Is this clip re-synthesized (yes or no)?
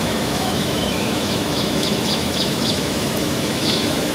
yes